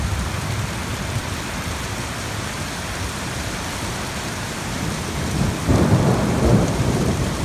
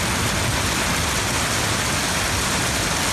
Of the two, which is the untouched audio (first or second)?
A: second